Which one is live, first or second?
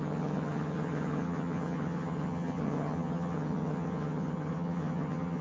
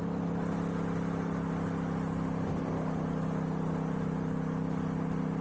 second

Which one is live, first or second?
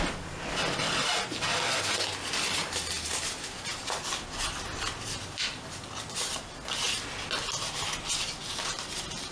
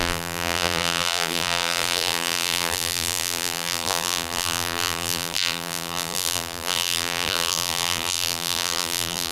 first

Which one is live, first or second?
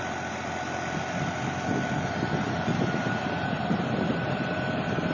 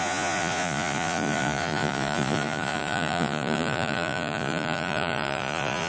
first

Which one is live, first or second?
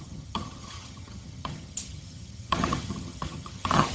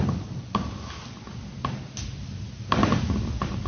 second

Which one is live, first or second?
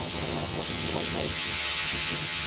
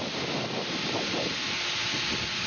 second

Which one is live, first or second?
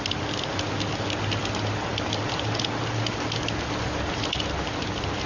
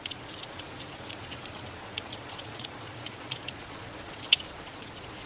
first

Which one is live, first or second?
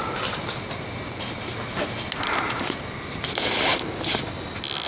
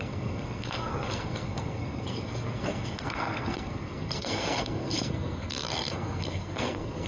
first